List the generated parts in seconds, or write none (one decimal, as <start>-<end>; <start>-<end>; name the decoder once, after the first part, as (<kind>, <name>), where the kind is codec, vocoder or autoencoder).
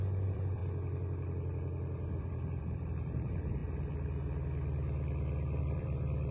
0.0-0.6 (vocoder, BigVGAN v2); 2.1-3.6; 5.6-6.3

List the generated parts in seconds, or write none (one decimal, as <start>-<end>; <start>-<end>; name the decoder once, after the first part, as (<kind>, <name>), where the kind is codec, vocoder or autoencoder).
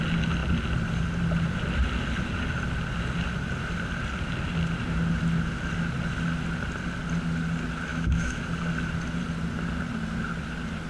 7.9-8.4 (autoencoder, DAC-VAE)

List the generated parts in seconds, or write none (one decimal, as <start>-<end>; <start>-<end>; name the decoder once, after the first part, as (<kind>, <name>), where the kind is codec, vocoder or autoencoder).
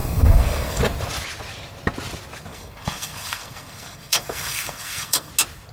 0.0-0.8 (codec, SNAC); 2.5-5.3